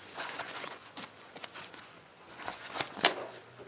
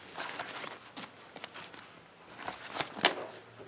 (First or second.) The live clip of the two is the second